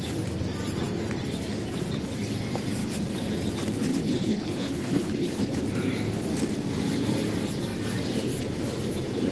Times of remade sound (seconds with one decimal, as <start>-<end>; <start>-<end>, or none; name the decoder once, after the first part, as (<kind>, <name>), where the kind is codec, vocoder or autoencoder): 3.9-5.6 (codec, HILCodec)